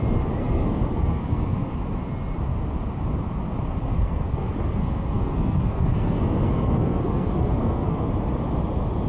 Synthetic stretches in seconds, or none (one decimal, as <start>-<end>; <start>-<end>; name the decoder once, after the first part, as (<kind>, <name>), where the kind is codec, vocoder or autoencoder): 0.4-1.8 (codec, SNAC); 3.8-8.1